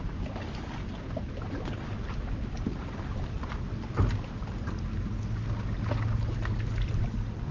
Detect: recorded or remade recorded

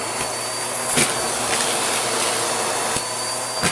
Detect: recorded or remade recorded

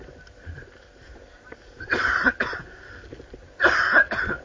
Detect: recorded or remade remade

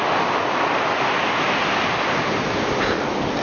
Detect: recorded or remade recorded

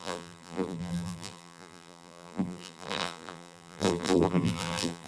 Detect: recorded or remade remade